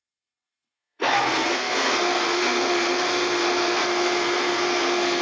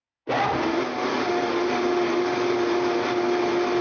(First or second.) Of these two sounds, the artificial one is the first